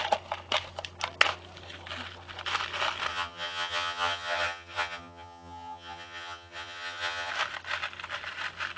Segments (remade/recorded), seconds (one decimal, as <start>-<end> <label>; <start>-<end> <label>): 0.0-3.1 recorded; 3.1-7.3 remade; 7.3-8.8 recorded